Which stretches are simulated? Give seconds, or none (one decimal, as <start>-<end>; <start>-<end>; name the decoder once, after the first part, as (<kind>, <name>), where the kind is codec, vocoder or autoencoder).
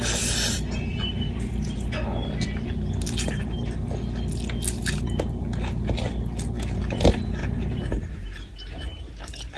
7.4-9.1 (vocoder, BigVGAN v2)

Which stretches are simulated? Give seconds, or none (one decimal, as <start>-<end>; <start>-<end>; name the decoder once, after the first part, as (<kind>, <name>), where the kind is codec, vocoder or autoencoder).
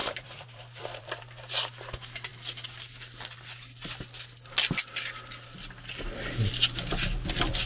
0.0-1.2 (vocoder, BigVGAN v2)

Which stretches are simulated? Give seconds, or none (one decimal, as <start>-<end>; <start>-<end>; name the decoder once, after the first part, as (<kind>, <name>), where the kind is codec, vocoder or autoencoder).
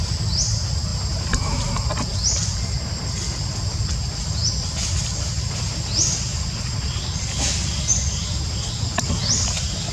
0.9-1.7 (vocoder, BigVGAN v2); 2.1-5.7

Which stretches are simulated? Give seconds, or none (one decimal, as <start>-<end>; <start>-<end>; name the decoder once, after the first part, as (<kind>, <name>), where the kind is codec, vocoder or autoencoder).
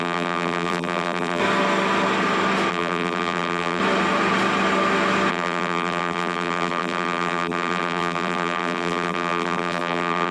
0.0-1.4 (vocoder, BigVGAN v2); 2.7-3.8; 5.3-10.3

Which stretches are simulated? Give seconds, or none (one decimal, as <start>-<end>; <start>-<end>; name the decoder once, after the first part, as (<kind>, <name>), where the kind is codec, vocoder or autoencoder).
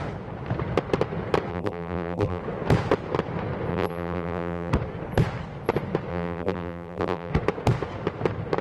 1.5-2.4 (vocoder, BigVGAN v2); 3.7-4.7; 6.1-7.3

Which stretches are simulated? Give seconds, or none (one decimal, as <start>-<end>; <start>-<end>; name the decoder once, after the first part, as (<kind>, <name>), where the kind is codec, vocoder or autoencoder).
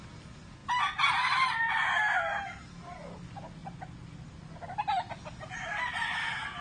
none